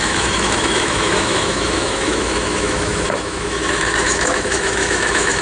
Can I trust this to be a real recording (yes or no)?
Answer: no